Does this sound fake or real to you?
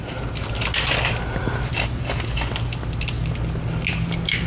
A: real